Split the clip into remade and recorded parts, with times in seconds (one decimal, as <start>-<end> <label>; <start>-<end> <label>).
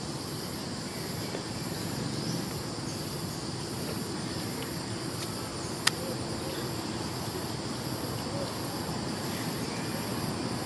0.0-10.7 recorded